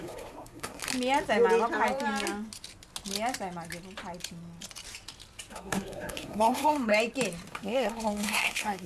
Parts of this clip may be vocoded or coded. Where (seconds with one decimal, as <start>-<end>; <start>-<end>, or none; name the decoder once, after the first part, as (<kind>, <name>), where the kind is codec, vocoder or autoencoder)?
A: 0.0-0.8 (codec, SNAC); 5.5-6.9; 7.5-8.9